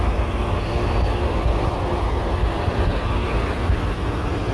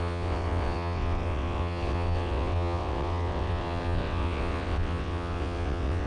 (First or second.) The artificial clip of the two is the second